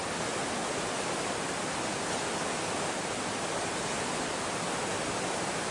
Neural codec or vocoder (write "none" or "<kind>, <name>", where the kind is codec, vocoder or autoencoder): none